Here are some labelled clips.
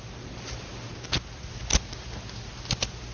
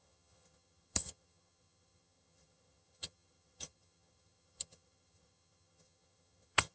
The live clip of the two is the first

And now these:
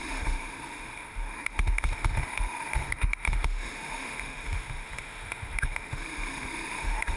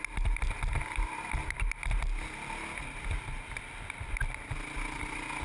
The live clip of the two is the second